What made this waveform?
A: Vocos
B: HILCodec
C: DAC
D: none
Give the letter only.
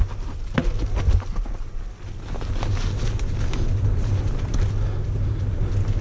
D